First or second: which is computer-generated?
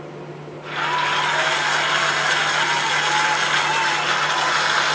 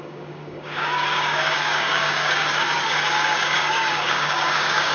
second